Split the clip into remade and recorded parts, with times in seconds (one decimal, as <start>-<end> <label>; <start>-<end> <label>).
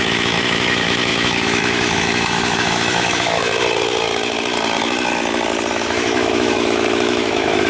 0.0-3.5 remade; 3.5-5.7 recorded; 5.7-7.7 remade